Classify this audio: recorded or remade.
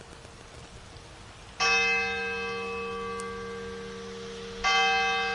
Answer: recorded